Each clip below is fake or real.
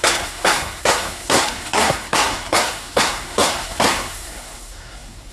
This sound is fake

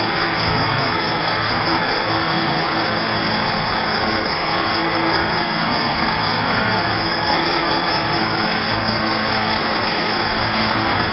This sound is fake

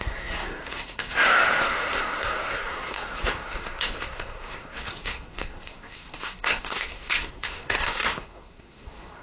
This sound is fake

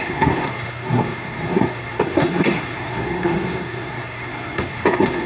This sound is fake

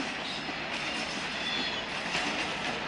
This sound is real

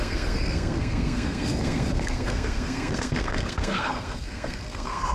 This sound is fake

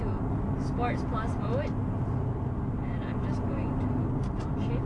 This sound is real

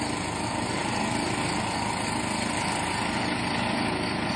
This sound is real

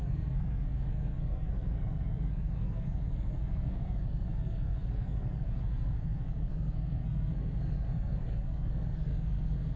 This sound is fake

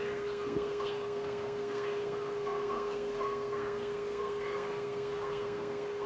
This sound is fake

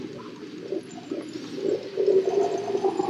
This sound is real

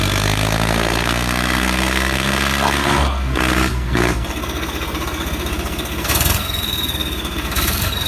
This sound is fake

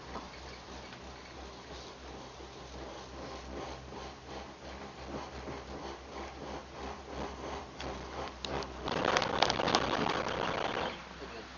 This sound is real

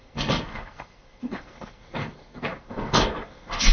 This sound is fake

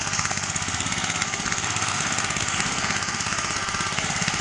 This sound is fake